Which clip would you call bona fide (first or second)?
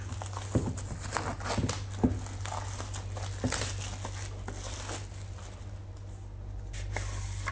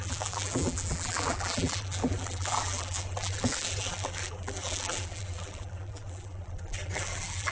first